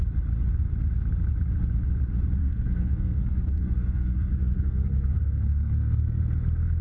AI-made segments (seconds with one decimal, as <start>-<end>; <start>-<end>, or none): 2.4-6.2